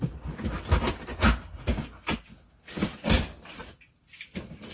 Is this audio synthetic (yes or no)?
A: no